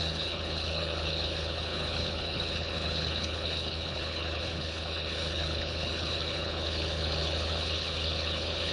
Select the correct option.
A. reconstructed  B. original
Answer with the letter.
A